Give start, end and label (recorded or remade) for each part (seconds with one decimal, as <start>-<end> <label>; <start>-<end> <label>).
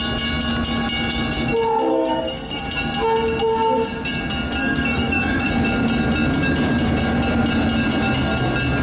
0.0-1.9 recorded; 1.9-2.6 remade; 2.6-4.6 recorded; 4.6-5.5 remade; 5.5-8.8 recorded